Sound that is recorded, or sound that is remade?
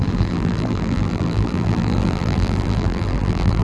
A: remade